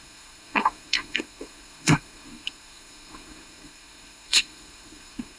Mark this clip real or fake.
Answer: fake